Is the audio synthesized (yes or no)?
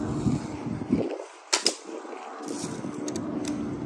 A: no